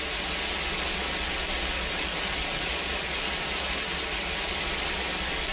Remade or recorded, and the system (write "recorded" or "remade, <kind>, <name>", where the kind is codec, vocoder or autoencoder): recorded